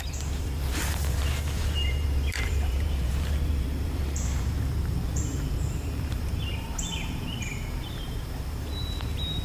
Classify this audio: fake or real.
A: fake